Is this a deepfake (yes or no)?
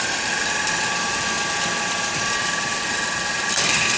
yes